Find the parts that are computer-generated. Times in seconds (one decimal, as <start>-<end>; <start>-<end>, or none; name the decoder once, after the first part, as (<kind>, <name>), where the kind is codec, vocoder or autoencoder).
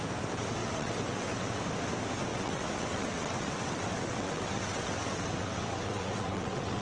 0.6-1.6 (vocoder, WaveNeXt); 2.3-6.8